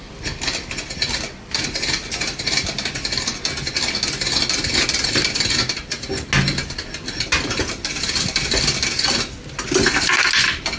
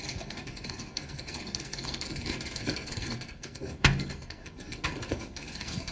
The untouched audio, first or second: first